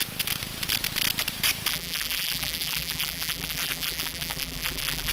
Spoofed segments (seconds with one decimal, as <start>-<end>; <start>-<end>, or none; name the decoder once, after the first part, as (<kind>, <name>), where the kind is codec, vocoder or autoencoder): 1.7-5.1 (vocoder, BigVGAN v2)